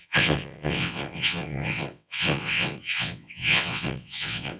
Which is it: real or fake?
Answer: fake